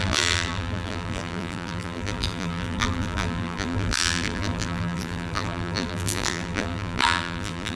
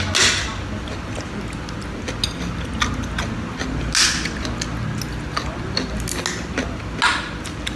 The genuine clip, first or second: second